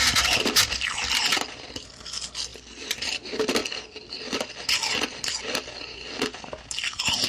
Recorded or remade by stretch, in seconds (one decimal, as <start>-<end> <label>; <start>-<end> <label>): 0.0-2.5 recorded; 2.5-3.1 remade; 3.1-7.3 recorded